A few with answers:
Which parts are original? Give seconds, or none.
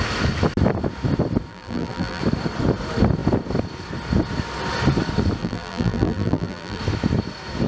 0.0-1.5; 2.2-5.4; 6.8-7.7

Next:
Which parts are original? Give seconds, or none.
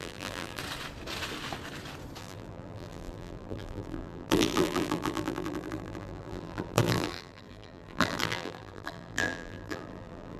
0.6-2.2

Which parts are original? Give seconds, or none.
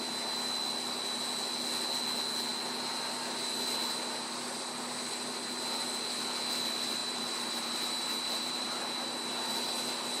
0.0-7.0; 8.8-10.2